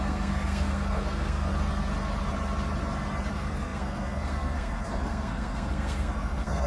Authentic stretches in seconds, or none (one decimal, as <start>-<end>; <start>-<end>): 1.5-3.3